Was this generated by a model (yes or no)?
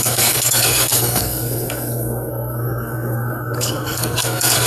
yes